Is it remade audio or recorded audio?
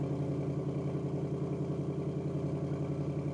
recorded